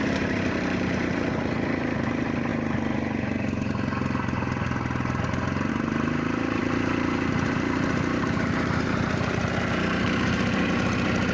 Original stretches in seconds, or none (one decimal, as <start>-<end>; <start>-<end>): 2.5-5.7